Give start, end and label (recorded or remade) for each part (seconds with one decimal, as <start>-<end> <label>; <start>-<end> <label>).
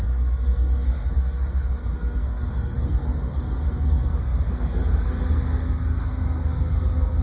0.0-7.2 remade